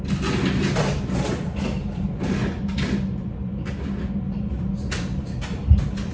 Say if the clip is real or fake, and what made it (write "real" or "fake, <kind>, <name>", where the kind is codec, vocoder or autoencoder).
real